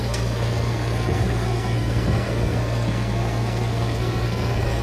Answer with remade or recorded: remade